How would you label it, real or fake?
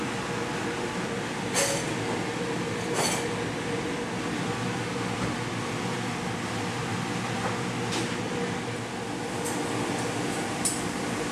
real